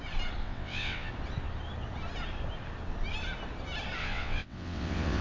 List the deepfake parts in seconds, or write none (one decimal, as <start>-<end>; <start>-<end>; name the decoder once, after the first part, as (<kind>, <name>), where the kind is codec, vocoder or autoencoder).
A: 0.4-1.1 (vocoder, WaveNeXt); 4.0-5.2